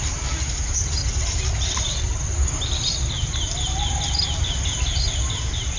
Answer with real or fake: real